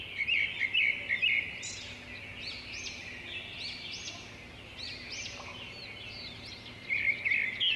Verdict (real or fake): real